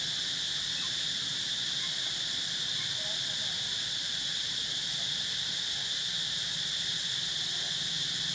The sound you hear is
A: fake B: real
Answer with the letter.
B